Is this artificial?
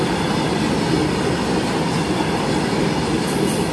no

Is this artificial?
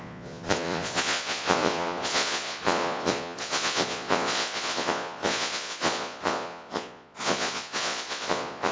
yes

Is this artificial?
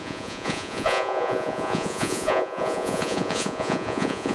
yes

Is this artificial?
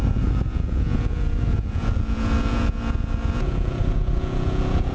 yes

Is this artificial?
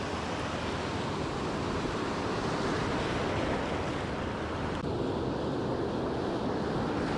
no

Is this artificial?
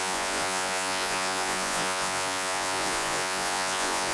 yes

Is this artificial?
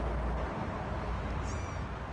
no